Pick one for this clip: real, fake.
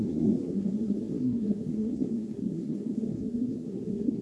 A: fake